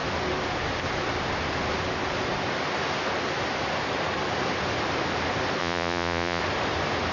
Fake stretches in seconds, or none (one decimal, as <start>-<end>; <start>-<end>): 5.6-6.4